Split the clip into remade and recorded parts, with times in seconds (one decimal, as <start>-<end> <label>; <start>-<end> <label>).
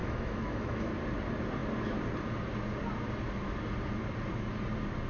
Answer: 0.0-0.9 remade; 0.9-5.1 recorded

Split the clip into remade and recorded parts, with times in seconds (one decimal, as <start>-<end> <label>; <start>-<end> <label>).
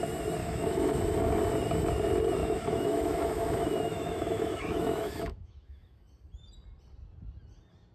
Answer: 0.0-0.4 recorded; 0.4-1.0 remade; 1.0-2.4 recorded; 2.4-6.0 remade; 6.0-7.9 recorded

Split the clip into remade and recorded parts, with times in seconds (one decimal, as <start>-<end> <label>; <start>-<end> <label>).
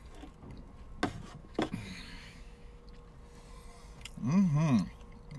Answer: 0.0-1.4 recorded; 1.4-2.8 remade; 2.8-5.4 recorded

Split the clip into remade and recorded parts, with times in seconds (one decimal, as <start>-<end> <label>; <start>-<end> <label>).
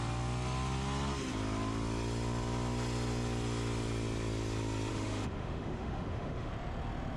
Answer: 0.0-4.9 recorded; 4.9-6.5 remade; 6.5-7.2 recorded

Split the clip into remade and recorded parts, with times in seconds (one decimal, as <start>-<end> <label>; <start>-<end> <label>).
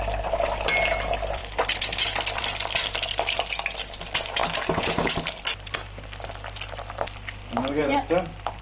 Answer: 0.0-4.4 recorded; 4.4-5.1 remade; 5.1-8.6 recorded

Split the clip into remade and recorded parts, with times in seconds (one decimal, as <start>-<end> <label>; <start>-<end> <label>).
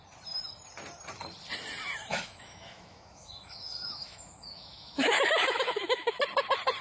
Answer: 0.0-2.1 recorded; 2.1-6.2 remade; 6.2-6.8 recorded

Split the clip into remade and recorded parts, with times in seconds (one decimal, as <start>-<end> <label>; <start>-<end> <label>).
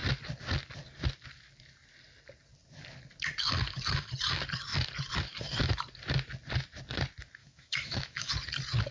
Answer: 0.0-7.4 recorded; 7.4-8.3 remade; 8.3-8.9 recorded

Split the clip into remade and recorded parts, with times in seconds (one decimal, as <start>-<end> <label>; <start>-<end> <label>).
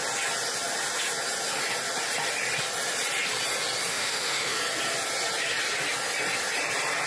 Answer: 0.0-3.9 recorded; 3.9-4.6 remade; 4.6-7.1 recorded